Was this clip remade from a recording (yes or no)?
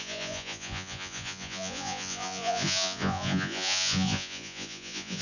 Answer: yes